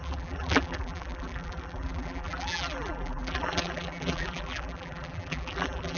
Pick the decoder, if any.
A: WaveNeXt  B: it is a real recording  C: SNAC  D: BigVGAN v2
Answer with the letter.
D